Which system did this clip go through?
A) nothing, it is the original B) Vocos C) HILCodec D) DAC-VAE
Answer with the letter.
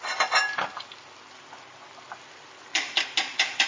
A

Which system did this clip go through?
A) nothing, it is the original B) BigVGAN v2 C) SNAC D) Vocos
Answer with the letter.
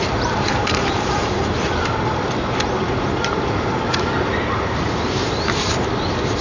B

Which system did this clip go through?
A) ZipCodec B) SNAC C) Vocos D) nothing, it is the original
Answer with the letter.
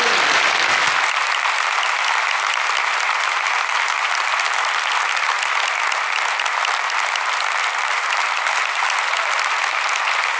D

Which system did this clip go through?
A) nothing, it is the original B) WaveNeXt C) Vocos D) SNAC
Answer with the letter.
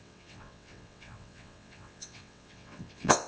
B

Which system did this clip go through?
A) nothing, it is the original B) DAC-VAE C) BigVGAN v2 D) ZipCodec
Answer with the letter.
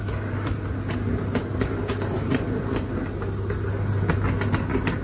A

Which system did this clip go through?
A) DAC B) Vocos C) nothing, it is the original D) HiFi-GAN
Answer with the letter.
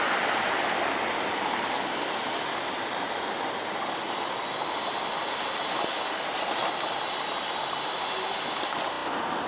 C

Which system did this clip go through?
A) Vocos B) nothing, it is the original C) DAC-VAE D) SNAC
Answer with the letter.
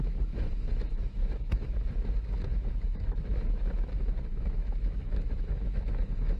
C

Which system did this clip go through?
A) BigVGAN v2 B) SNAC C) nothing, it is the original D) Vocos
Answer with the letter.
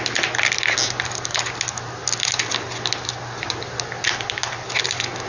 C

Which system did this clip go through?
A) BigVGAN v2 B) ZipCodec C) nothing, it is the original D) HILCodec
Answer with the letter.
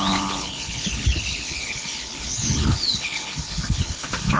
D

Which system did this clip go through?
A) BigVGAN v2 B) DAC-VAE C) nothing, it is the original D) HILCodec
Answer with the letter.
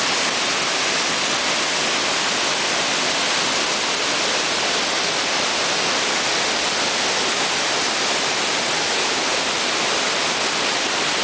C